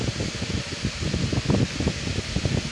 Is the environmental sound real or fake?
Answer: real